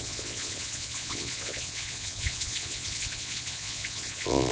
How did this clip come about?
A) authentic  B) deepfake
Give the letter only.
B